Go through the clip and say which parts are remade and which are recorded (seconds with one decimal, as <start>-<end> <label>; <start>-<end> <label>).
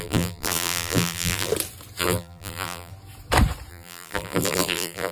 0.0-1.5 remade; 1.5-2.0 recorded; 2.0-2.9 remade; 2.9-3.7 recorded; 3.7-5.1 remade